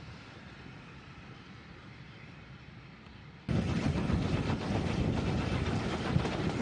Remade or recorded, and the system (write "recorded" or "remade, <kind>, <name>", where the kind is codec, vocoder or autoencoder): recorded